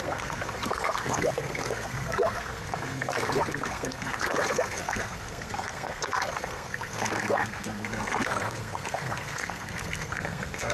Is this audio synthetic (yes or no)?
yes